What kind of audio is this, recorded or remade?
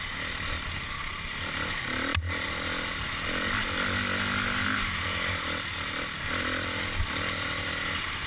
recorded